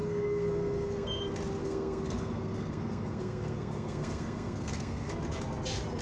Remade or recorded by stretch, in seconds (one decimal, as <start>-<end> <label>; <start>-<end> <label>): 0.0-1.2 remade; 1.2-1.6 recorded; 1.6-5.1 remade; 5.1-6.0 recorded

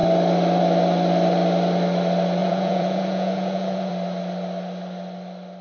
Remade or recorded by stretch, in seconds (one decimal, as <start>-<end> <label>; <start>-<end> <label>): 0.0-2.4 recorded; 2.4-3.9 remade; 3.9-5.6 recorded

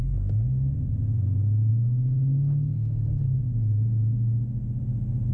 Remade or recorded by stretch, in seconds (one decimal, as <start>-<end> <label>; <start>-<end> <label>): 0.0-5.3 recorded

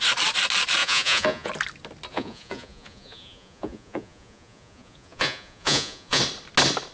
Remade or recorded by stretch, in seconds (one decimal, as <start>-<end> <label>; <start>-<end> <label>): 0.0-0.8 recorded; 0.8-1.5 remade; 1.5-2.1 recorded; 2.1-6.2 remade; 6.2-6.9 recorded